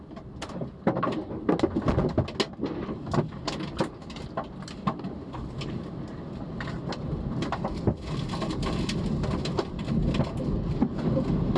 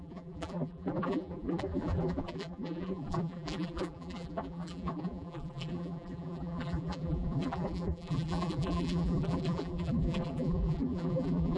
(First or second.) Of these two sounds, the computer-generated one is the second